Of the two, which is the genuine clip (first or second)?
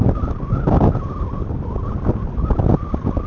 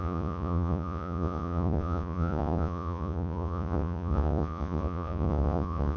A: first